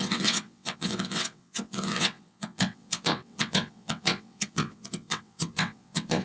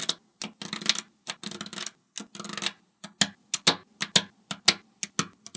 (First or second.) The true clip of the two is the second